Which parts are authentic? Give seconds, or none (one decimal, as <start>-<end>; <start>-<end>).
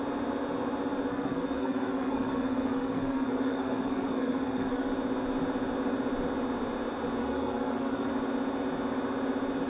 0.0-1.1; 4.9-7.2; 8.1-9.7